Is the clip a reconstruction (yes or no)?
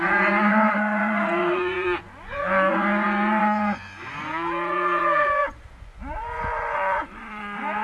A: yes